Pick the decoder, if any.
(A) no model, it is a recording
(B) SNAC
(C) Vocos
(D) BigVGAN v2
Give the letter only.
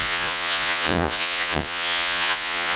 C